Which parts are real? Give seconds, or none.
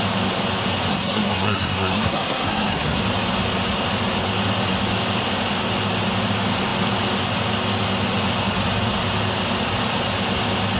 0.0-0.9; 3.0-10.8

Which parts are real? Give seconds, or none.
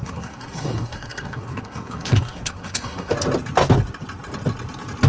3.1-5.1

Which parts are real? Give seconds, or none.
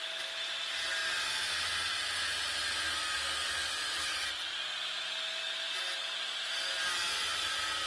0.0-7.9